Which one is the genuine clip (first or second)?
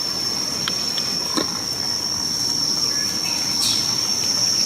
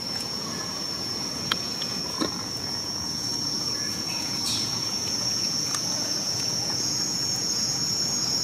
first